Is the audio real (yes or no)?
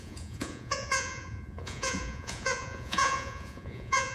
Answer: no